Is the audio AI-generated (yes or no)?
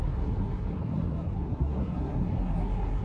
yes